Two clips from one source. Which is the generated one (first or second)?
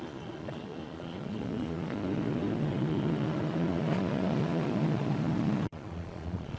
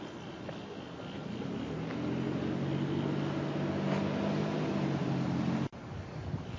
first